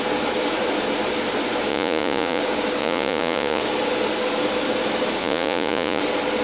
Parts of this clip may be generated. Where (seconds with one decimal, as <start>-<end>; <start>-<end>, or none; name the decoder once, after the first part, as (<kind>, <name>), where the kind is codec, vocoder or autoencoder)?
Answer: 1.7-2.4 (vocoder, Vocos); 2.8-3.6; 5.2-6.0